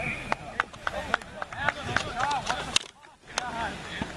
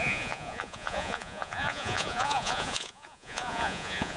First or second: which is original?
first